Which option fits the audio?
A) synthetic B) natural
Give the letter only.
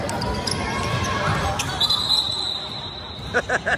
A